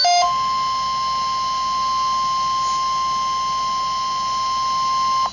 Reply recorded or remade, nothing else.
recorded